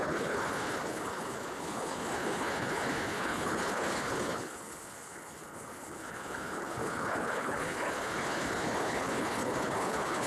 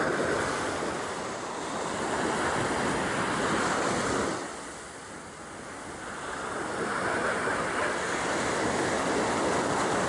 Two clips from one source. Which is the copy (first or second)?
first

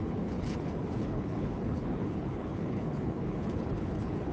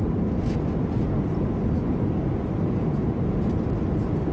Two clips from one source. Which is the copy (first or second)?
first